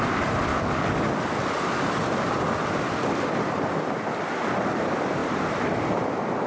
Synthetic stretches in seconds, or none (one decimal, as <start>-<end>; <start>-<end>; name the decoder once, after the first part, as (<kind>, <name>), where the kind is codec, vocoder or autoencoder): 0.5-1.0 (codec, DAC)

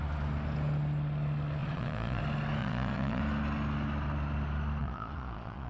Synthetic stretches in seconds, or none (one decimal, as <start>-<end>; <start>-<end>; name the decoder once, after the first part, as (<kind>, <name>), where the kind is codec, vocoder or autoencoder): 1.6-2.2 (vocoder, Vocos); 2.6-3.2; 4.8-5.7

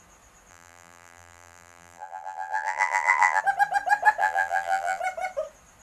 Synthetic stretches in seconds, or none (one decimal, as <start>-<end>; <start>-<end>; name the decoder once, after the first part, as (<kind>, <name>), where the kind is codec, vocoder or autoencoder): 0.5-3.4 (vocoder, BigVGAN v2); 4.2-5.0